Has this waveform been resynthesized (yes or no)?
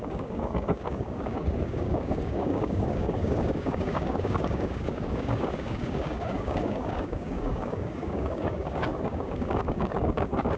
yes